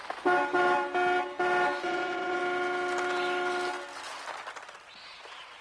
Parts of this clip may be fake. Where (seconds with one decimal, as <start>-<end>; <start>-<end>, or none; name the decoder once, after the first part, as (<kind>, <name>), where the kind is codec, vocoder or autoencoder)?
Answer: 1.8-2.4 (vocoder, WaveNeXt)